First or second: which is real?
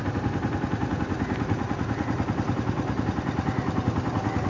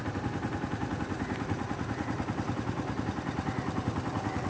first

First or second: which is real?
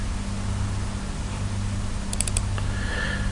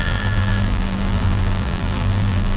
first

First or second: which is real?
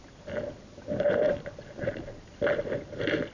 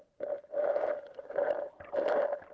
first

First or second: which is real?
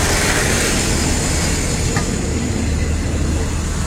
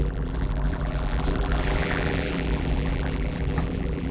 first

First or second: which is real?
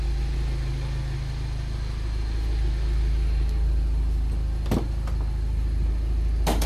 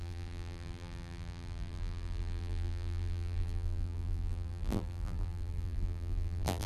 first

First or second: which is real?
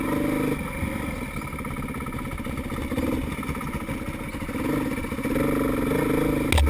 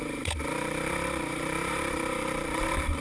first